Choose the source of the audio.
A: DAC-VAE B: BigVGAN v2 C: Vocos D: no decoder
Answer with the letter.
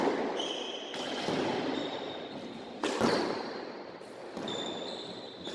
D